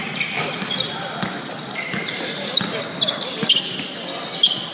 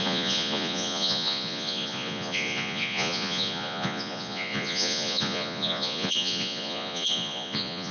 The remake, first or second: second